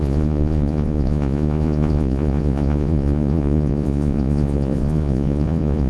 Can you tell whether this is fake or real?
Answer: fake